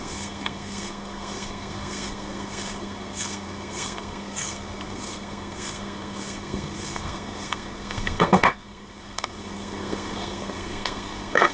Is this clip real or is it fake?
fake